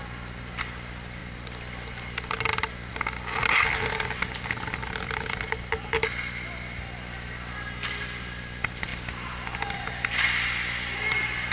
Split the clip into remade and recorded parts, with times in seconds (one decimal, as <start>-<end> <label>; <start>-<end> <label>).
0.0-11.5 recorded